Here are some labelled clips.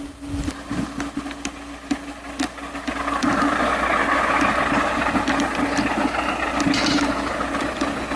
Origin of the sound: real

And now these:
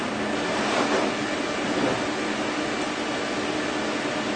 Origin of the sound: real